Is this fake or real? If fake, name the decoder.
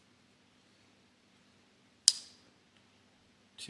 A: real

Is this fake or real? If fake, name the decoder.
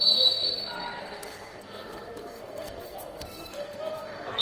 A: fake, codec, SNAC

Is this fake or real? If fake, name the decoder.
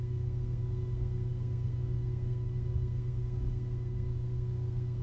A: fake, codec, SNAC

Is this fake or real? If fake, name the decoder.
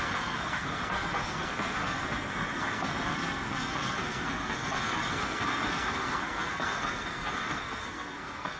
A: fake, codec, SNAC